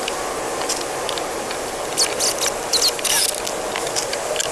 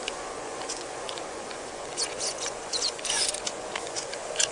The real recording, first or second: first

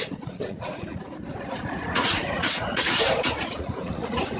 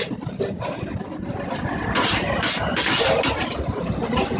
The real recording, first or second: second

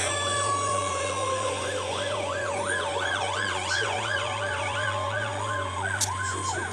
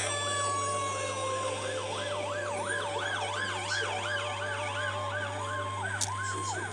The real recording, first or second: second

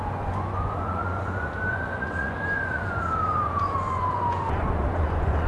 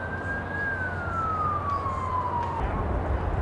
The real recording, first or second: second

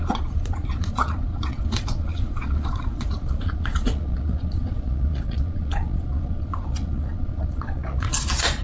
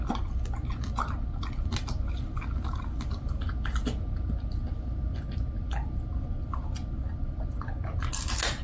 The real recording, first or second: second